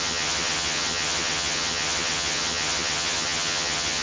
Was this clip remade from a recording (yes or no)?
yes